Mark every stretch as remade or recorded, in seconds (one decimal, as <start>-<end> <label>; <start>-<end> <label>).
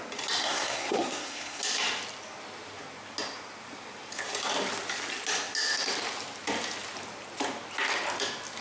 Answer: 0.0-0.4 recorded; 0.4-1.6 remade; 1.6-8.6 recorded